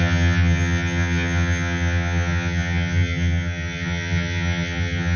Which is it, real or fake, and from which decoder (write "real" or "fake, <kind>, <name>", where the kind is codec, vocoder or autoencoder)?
fake, vocoder, HiFi-GAN